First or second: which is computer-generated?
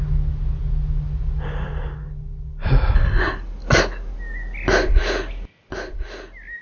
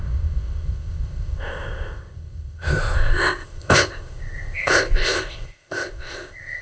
second